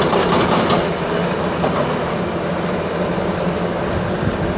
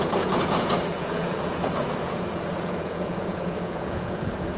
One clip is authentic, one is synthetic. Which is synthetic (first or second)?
second